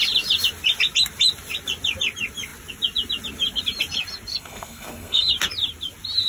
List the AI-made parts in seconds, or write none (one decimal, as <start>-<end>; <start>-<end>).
4.3-5.3